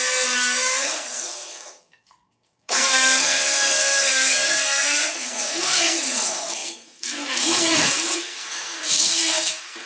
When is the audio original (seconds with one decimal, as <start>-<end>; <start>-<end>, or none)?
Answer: none